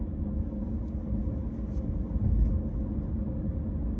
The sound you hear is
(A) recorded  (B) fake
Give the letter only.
A